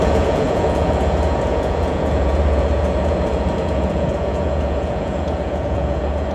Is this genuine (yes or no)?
no